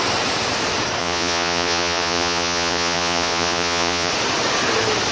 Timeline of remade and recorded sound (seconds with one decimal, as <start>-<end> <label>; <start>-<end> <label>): 0.0-1.0 recorded; 1.0-4.1 remade; 4.1-5.1 recorded